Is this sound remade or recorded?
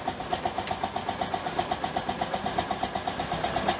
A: recorded